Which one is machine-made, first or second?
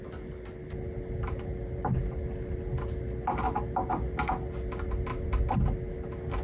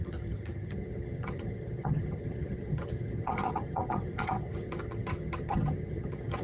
second